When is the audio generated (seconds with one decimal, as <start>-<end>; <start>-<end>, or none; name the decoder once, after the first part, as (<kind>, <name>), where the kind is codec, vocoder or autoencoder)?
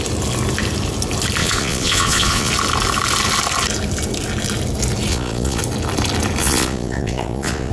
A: 1.4-2.5 (vocoder, Vocos); 5.1-5.6; 6.4-7.7